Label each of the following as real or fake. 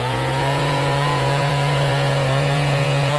fake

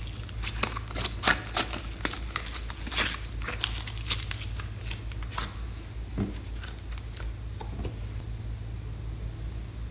real